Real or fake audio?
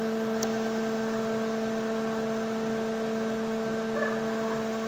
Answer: real